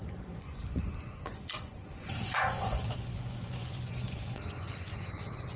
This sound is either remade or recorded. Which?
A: remade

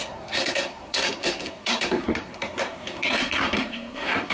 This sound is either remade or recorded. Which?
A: remade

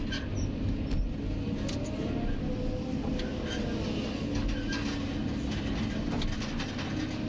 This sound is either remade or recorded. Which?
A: recorded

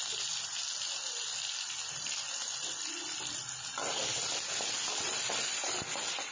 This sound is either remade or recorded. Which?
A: recorded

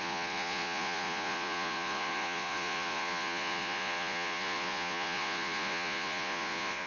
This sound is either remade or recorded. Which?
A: remade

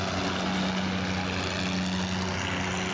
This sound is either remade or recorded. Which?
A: recorded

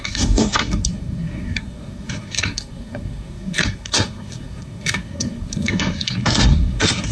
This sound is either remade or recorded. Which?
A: remade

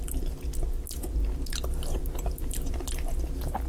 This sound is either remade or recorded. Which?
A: recorded